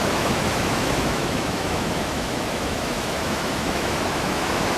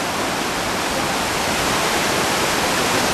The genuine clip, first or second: second